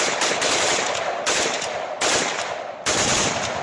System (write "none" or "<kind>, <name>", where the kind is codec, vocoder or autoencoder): none